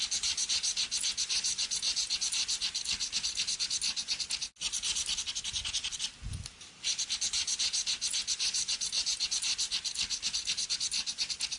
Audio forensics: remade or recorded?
recorded